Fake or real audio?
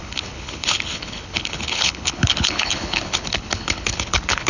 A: fake